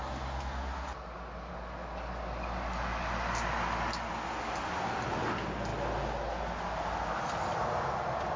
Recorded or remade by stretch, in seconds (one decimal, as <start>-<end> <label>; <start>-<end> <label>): 0.0-8.4 recorded